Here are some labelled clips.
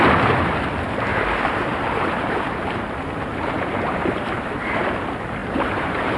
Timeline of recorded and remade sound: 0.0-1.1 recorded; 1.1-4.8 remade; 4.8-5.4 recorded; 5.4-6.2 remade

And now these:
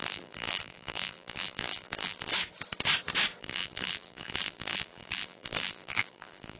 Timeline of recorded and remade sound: 0.0-2.3 remade; 2.3-3.4 recorded; 3.4-6.6 remade